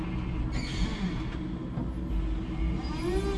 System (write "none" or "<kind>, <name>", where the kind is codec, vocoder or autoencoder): none